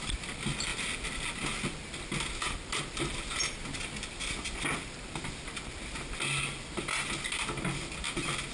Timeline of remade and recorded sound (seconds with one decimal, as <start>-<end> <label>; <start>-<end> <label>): 0.0-8.5 recorded